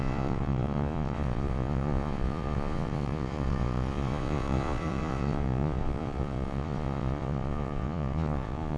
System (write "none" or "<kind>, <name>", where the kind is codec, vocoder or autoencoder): vocoder, Vocos